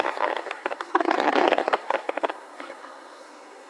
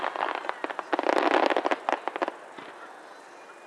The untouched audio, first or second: second